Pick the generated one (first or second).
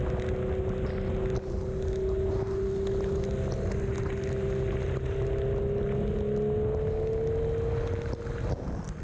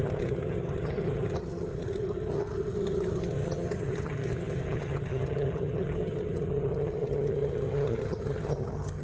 second